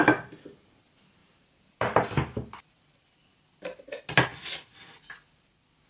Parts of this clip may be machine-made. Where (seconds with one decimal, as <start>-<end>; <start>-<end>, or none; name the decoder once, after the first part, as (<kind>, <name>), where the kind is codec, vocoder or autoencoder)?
1.2-3.8 (vocoder, BigVGAN v2); 4.3-5.0